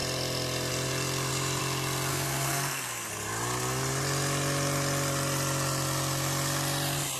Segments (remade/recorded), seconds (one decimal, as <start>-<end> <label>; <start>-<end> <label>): 0.0-2.1 recorded; 2.1-3.1 remade; 3.1-7.2 recorded